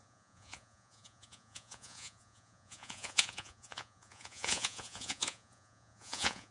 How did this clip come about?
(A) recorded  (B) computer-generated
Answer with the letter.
B